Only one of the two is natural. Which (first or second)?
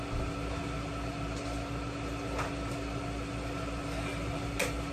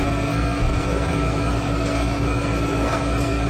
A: first